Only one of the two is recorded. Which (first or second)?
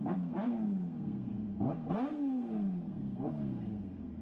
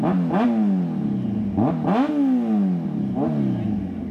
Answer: second